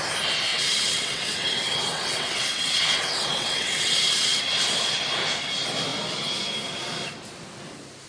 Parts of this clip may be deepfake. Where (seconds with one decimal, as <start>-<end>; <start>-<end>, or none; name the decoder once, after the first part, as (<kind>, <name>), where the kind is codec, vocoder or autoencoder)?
0.5-4.4 (vocoder, WaveNeXt)

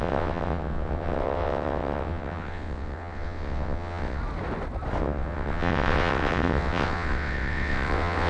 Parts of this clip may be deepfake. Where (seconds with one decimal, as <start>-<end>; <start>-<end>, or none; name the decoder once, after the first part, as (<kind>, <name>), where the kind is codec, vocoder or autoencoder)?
0.0-4.2 (vocoder, WaveNeXt); 5.0-8.3

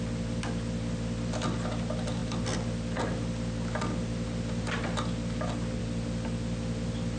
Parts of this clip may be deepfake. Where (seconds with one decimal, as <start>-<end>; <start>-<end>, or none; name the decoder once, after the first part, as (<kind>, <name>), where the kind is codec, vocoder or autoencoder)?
none

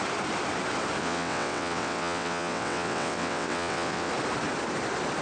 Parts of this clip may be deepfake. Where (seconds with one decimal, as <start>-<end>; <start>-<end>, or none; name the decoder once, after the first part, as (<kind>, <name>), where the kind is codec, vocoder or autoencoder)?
1.0-4.1 (vocoder, WaveNeXt)

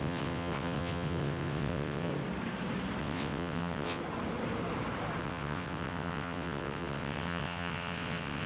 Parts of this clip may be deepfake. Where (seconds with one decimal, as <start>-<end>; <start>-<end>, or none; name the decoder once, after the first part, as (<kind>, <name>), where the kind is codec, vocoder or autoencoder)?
0.0-2.1 (vocoder, WaveNeXt); 3.0-4.0; 5.2-8.5